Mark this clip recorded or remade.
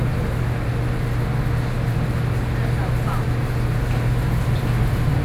recorded